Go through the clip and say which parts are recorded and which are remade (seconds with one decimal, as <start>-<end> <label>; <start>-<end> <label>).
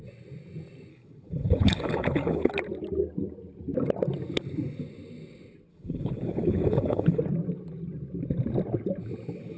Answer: 0.0-0.9 recorded; 0.9-2.5 remade; 2.5-5.7 recorded; 5.7-7.2 remade; 7.2-9.6 recorded